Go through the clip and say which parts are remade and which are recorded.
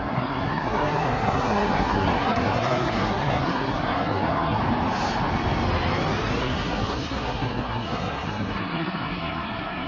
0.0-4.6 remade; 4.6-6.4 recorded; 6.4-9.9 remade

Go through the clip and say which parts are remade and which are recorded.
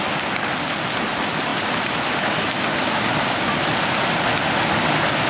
0.0-5.3 recorded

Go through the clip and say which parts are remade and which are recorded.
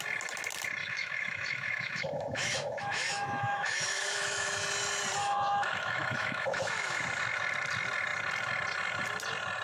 0.0-0.8 recorded; 0.8-4.5 remade; 4.5-5.2 recorded; 5.2-7.0 remade; 7.0-9.6 recorded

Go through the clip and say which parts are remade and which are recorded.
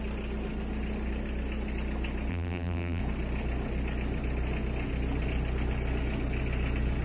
0.0-2.3 recorded; 2.3-3.0 remade; 3.0-7.0 recorded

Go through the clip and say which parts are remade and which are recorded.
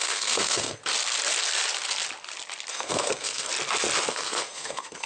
0.0-0.8 remade; 0.8-2.7 recorded; 2.7-3.5 remade; 3.5-4.1 recorded; 4.1-5.1 remade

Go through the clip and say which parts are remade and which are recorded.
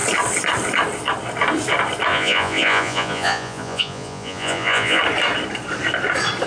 0.0-2.1 recorded; 2.1-5.0 remade; 5.0-6.5 recorded